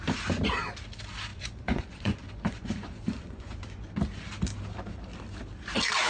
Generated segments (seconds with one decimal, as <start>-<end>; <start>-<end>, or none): 1.3-3.9